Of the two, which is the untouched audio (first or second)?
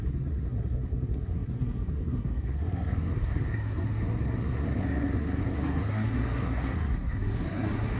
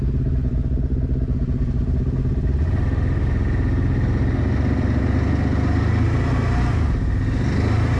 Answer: second